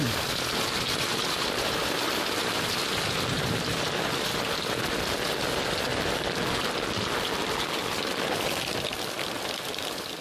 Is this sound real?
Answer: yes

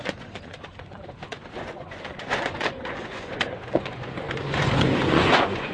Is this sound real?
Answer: no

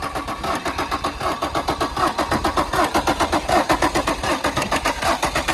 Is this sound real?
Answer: yes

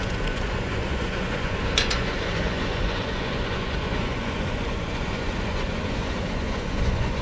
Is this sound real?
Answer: no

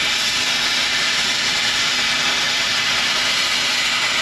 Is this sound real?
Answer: yes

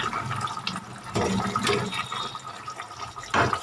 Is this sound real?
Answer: yes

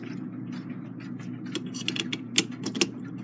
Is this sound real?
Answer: yes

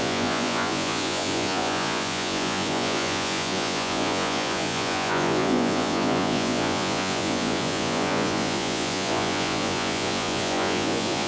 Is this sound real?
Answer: no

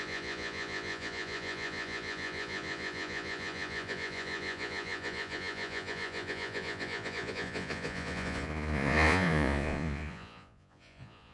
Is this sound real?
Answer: no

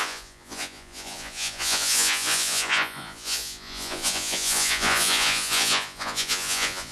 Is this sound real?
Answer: no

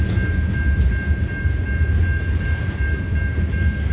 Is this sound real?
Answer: yes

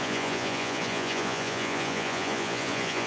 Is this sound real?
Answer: no